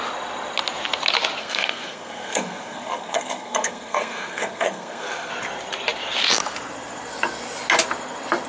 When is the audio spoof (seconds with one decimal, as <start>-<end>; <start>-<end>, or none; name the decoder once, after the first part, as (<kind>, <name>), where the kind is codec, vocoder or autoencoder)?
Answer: 1.4-5.3 (codec, SNAC)